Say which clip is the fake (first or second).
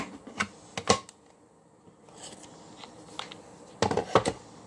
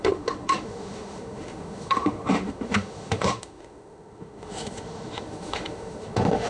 second